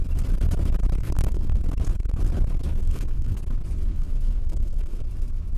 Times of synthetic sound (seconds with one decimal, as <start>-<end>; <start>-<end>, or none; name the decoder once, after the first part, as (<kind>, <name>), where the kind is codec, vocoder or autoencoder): 1.0-1.6 (codec, SNAC); 2.8-3.4; 3.9-5.0